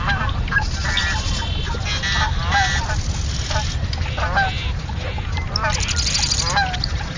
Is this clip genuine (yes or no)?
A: yes